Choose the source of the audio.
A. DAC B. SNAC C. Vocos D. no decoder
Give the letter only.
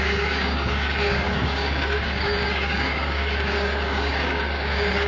A